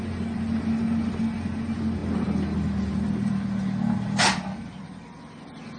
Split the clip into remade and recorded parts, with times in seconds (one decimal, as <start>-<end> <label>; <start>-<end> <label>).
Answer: 0.0-5.8 recorded